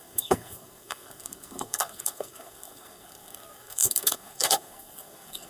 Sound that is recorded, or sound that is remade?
remade